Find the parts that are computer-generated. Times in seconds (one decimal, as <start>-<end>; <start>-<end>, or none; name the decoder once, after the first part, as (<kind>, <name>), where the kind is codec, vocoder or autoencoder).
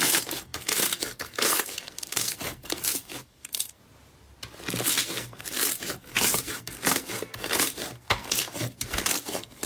0.0-3.8 (codec, SNAC); 4.8-9.7